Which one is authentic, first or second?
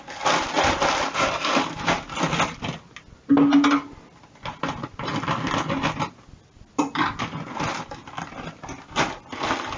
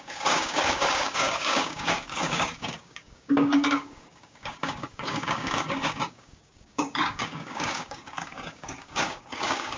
first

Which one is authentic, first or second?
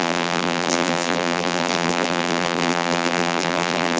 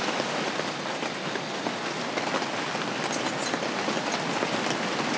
second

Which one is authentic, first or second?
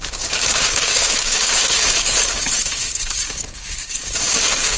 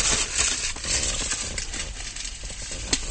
second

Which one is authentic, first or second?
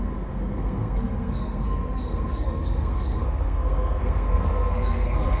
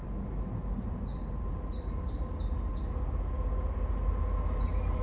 second